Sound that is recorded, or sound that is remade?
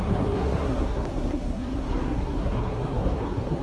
remade